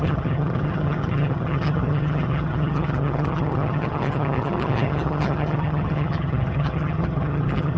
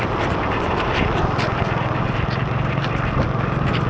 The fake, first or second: first